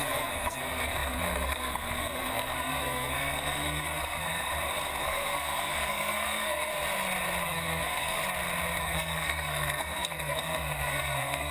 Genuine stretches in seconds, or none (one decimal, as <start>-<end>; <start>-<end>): 4.5-5.0; 6.7-7.4; 8.2-8.8

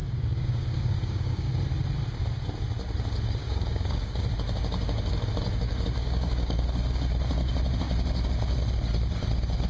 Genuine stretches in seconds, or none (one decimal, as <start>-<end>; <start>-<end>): 1.5-3.4; 4.1-6.0; 6.6-9.7